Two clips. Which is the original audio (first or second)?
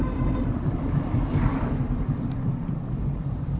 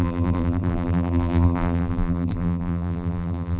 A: first